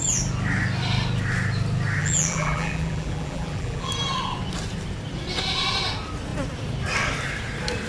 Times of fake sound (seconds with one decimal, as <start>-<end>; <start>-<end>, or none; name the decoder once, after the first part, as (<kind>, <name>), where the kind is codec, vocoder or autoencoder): 2.0-3.9 (vocoder, BigVGAN v2)